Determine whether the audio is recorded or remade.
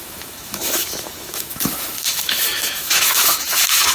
remade